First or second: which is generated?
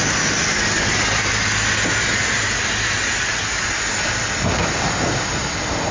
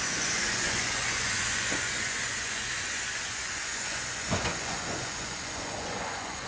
second